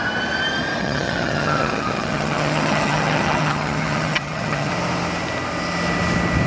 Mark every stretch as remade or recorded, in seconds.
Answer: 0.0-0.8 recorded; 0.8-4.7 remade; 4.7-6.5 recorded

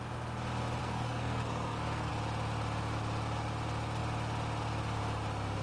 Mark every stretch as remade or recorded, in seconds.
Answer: 0.0-0.8 recorded; 0.8-2.1 remade; 2.1-5.6 recorded

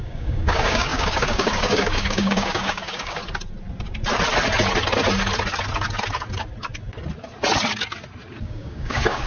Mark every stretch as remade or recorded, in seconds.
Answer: 0.0-3.2 remade; 3.2-8.4 recorded; 8.4-9.3 remade

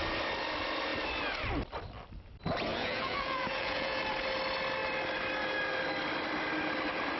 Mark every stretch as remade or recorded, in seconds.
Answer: 0.0-2.7 recorded; 2.7-4.0 remade; 4.0-7.2 recorded